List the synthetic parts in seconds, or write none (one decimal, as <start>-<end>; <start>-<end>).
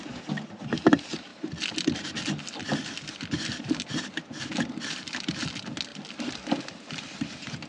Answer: none